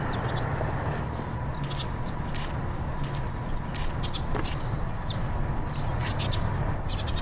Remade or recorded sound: recorded